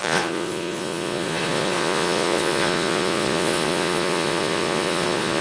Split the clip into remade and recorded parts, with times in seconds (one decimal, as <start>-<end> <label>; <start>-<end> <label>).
0.0-5.4 remade